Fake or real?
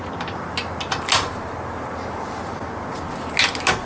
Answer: real